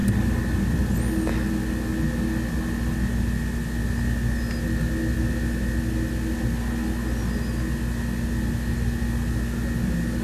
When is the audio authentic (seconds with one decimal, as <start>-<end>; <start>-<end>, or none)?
0.0-10.2

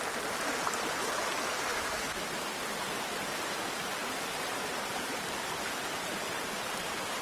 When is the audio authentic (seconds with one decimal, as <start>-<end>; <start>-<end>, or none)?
0.0-1.7; 2.2-7.2

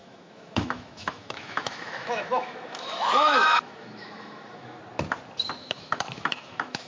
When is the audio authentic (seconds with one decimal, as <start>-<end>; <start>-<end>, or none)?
4.8-5.5

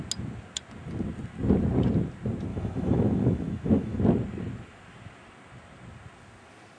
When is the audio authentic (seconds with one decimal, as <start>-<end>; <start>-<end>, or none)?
0.0-2.5; 4.0-6.8

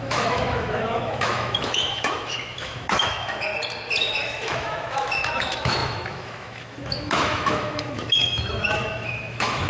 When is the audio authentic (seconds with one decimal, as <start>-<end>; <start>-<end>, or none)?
3.5-4.0

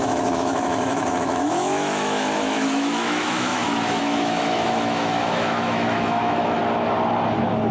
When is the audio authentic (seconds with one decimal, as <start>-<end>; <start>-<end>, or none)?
6.6-7.7

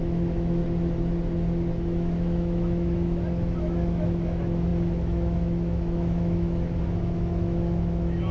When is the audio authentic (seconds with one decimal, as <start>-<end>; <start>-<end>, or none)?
0.6-1.7